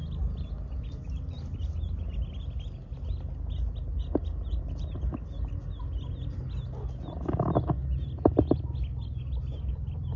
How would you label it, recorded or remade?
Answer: recorded